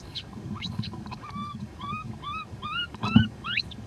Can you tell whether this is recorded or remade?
remade